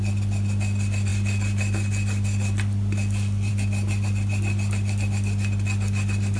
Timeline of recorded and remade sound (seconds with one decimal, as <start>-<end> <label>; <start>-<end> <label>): 0.0-6.4 recorded